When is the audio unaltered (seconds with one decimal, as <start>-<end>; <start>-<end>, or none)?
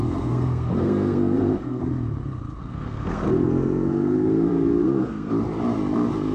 1.8-2.6; 5.3-6.3